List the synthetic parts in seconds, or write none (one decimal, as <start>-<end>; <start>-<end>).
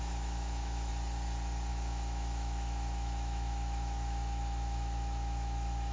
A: 0.0-0.9; 1.7-5.9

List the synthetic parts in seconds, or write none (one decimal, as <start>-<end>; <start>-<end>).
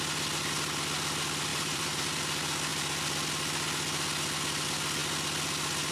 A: 1.5-2.2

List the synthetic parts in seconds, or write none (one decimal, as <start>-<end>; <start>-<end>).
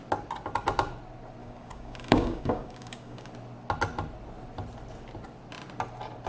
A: 1.4-3.3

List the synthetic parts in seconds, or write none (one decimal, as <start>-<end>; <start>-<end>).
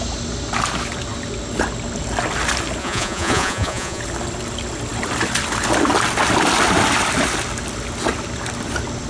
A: 2.8-4.0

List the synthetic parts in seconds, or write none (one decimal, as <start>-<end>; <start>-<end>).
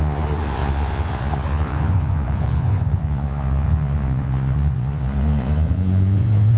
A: 0.0-6.6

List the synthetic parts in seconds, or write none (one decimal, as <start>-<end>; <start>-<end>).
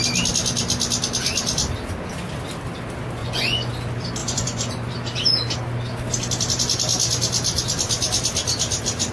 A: 3.2-3.7; 4.2-4.9